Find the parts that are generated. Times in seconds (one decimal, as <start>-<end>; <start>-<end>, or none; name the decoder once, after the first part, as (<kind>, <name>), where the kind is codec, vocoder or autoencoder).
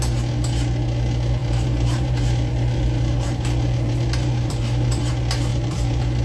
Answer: 1.4-5.1 (vocoder, BigVGAN v2); 5.5-6.2